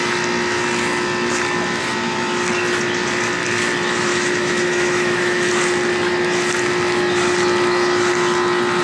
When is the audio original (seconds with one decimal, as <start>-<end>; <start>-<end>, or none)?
0.0-4.1; 5.5-8.8